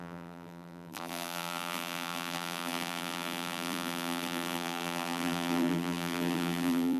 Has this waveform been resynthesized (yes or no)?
yes